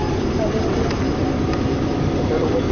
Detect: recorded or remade recorded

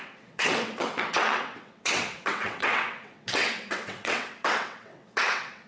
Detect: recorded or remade remade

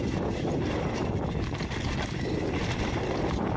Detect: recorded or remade recorded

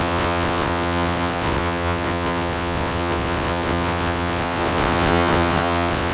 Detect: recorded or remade remade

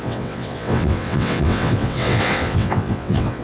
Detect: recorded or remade remade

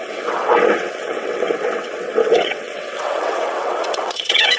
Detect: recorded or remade remade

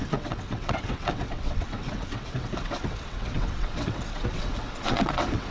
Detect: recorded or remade remade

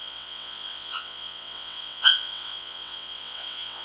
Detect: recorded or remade remade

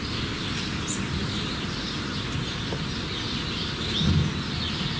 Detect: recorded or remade recorded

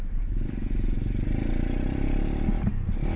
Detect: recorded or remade recorded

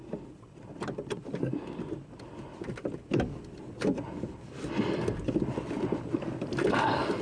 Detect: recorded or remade recorded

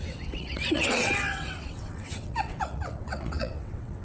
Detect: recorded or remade remade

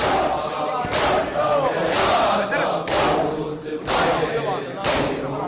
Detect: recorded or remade recorded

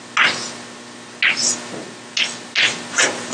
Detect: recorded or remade recorded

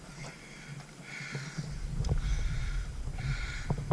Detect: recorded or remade recorded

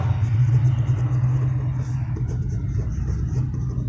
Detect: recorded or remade recorded